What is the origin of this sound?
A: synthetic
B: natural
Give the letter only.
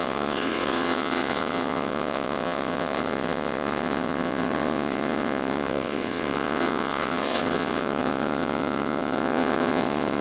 A